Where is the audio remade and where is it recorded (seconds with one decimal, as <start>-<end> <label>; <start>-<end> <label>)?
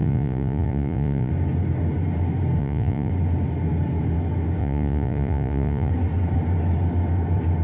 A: 0.0-1.3 remade; 1.3-2.6 recorded; 2.6-3.1 remade; 3.1-4.6 recorded; 4.6-5.9 remade; 5.9-7.6 recorded